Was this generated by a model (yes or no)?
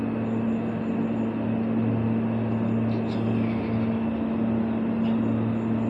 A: no